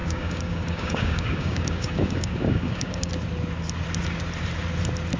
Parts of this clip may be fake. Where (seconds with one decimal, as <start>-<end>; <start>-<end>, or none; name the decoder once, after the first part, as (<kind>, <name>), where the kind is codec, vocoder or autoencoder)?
0.0-3.1 (codec, DAC)

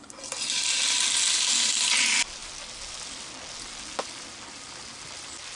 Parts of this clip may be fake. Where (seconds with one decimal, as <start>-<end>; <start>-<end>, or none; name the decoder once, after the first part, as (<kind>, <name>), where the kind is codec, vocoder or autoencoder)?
none

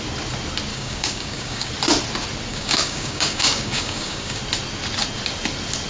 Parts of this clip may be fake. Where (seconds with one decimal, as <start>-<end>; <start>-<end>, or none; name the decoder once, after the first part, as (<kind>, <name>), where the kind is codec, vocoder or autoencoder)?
0.7-1.7 (codec, DAC); 2.5-4.4